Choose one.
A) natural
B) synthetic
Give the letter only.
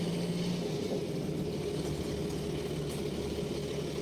A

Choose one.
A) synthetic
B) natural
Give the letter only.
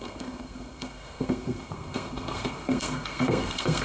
A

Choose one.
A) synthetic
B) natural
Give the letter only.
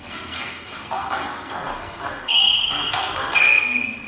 A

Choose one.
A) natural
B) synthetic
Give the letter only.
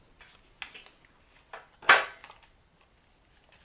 A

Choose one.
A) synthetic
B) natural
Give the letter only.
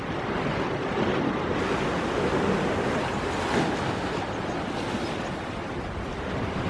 B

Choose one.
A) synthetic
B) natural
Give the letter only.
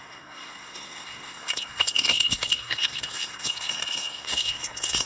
A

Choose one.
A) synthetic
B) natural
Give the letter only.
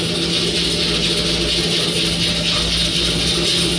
B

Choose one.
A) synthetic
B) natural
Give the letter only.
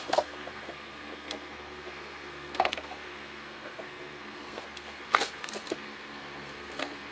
A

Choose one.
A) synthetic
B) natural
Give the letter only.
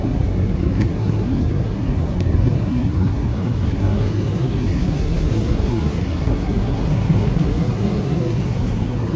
A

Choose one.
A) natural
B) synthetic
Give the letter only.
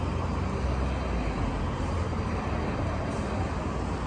A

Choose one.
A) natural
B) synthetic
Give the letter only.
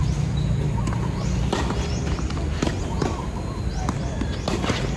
A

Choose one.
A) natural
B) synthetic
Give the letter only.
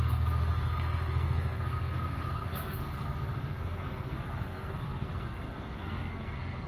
B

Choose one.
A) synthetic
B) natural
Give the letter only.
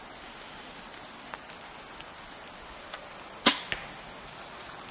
B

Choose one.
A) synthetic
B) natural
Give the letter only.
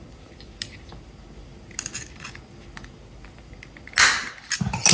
B